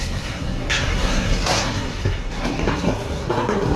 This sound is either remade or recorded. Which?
remade